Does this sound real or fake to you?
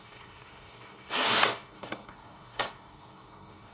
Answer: fake